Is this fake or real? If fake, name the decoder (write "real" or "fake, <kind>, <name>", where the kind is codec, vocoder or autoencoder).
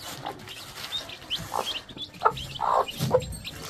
real